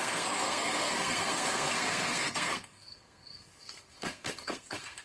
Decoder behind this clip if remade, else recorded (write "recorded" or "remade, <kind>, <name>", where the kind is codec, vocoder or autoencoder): remade, codec, SNAC